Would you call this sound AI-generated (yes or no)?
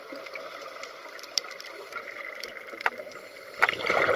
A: yes